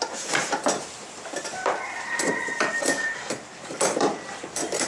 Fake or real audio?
fake